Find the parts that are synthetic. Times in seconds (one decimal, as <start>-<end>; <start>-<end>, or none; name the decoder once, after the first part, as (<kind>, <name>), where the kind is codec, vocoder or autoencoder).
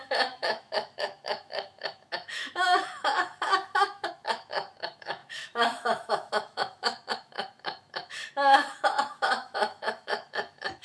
0.0-10.8 (autoencoder, DAC-VAE)